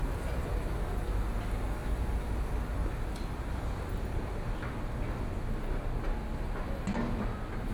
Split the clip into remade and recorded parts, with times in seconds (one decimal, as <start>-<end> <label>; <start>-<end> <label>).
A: 0.0-1.8 recorded; 1.8-2.4 remade; 2.4-7.7 recorded